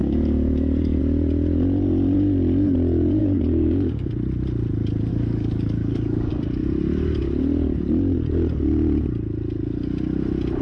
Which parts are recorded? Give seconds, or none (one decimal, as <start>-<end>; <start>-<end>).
1.0-3.2; 4.1-5.1; 6.3-10.6